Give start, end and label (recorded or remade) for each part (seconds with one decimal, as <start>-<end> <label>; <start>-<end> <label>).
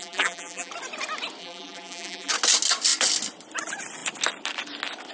0.0-0.7 remade; 0.7-1.4 recorded; 1.4-2.3 remade; 2.3-5.1 recorded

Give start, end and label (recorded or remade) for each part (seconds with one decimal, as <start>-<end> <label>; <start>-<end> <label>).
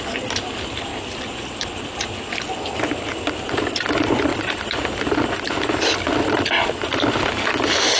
0.0-8.0 recorded